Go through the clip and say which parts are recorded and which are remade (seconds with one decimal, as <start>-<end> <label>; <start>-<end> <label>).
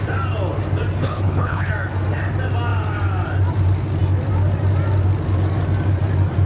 0.0-1.0 recorded; 1.0-1.7 remade; 1.7-6.5 recorded